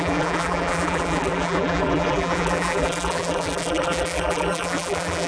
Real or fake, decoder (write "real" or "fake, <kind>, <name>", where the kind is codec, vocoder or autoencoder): fake, vocoder, BigVGAN v2